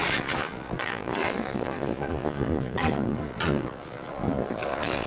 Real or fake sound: fake